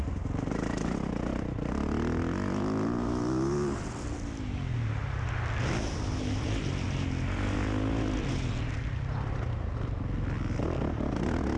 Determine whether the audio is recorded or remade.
recorded